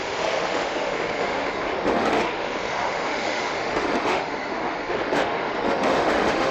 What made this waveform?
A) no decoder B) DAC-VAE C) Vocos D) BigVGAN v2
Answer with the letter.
B